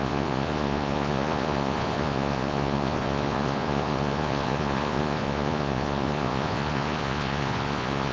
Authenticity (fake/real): fake